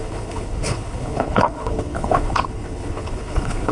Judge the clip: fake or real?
fake